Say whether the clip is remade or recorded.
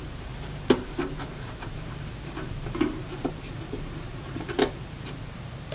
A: remade